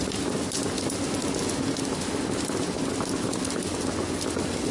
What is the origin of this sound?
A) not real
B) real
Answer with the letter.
B